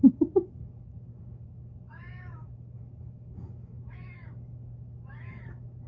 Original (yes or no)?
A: no